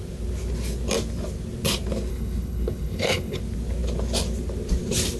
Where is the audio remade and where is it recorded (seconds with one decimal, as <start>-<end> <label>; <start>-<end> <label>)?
0.0-2.1 recorded; 2.1-3.4 remade; 3.4-5.2 recorded